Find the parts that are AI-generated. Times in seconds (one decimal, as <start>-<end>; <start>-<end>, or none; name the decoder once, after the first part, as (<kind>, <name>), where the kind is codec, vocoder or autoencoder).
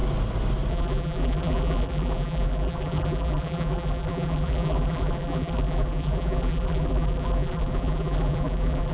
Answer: 0.7-8.9 (vocoder, BigVGAN v2)